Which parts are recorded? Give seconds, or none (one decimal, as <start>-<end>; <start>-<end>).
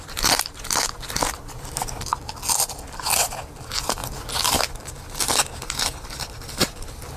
0.0-7.2